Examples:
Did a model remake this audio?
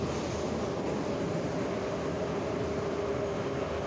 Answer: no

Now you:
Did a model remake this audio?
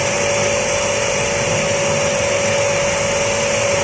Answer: no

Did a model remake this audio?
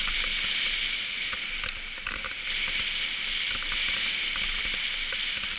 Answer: no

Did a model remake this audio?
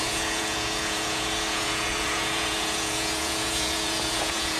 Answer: yes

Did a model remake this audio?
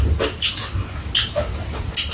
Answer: no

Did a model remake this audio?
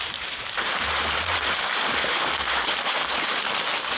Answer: no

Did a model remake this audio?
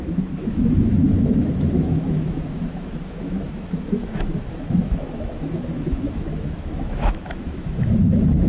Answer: yes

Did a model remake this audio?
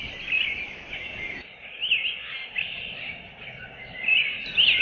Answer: yes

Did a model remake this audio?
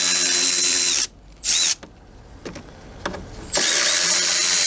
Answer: no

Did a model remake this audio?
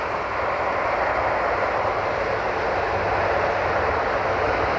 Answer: no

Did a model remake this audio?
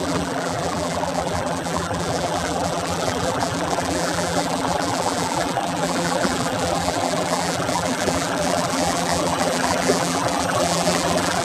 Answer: yes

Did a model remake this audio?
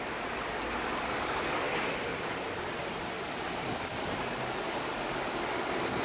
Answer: no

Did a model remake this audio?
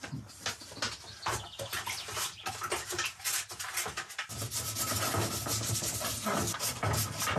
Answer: no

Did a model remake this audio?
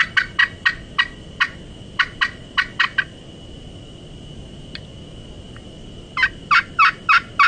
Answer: no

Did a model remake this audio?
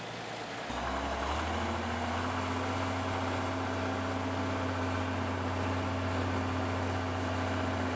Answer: no